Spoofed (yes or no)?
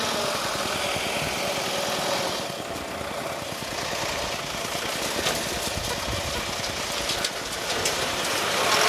no